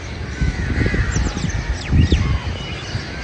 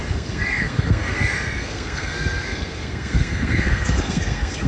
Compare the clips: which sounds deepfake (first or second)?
second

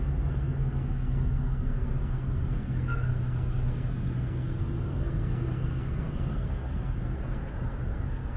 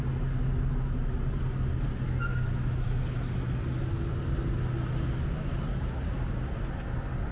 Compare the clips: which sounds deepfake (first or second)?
first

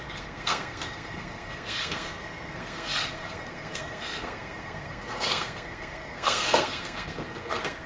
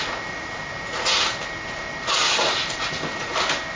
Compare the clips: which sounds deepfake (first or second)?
first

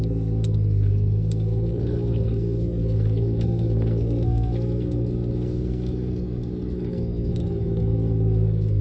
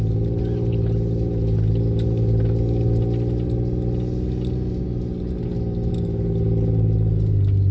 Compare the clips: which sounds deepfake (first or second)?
first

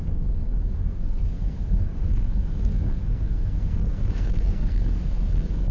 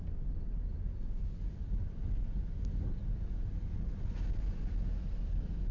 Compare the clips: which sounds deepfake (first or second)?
first